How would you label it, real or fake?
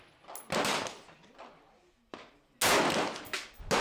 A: real